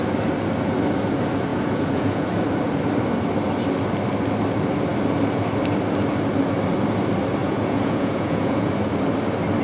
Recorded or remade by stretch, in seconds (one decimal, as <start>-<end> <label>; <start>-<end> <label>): 0.0-1.5 recorded; 1.5-2.3 remade; 2.3-7.4 recorded; 7.4-8.7 remade; 8.7-9.6 recorded